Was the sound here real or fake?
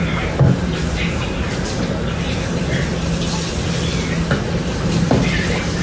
real